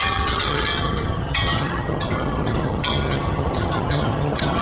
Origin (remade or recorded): remade